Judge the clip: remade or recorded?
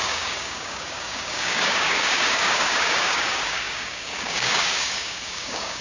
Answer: remade